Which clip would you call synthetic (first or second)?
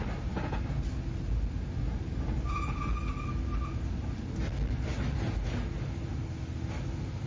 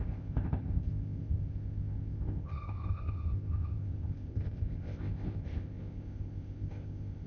second